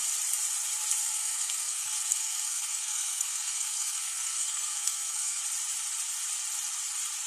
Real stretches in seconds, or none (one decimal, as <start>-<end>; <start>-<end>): 0.0-1.0; 5.4-7.3